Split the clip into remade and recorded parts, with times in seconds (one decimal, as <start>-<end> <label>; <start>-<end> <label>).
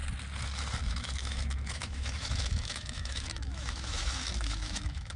0.0-0.8 recorded; 0.8-5.2 remade